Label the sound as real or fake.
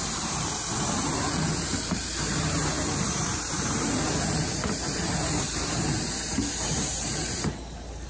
fake